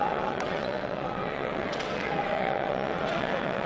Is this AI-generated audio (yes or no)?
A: yes